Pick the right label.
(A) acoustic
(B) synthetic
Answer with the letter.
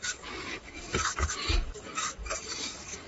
B